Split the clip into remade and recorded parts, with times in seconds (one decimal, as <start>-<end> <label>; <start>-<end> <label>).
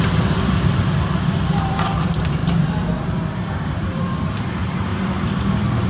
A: 0.0-5.9 remade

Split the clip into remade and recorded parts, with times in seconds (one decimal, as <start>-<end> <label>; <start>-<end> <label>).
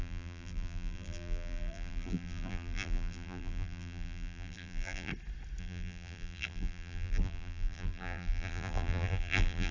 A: 0.0-5.1 remade; 5.1-5.6 recorded; 5.6-9.7 remade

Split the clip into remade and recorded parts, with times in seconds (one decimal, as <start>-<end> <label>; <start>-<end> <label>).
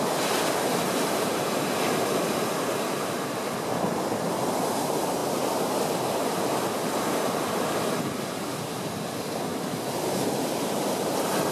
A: 0.0-9.5 recorded; 9.5-11.0 remade; 11.0-11.5 recorded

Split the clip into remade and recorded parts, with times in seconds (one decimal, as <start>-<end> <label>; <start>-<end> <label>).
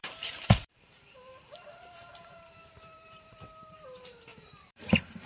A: 0.0-5.3 remade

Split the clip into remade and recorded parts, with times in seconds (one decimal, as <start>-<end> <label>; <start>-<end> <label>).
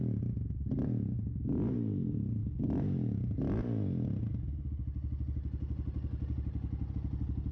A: 0.0-7.5 recorded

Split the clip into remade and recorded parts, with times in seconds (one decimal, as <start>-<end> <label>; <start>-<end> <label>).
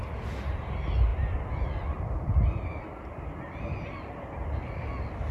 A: 0.0-1.1 recorded; 1.1-4.3 remade; 4.3-5.3 recorded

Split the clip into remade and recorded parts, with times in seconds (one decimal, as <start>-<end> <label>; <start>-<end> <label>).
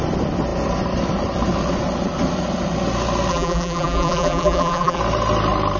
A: 0.0-3.3 recorded; 3.3-5.0 remade; 5.0-5.8 recorded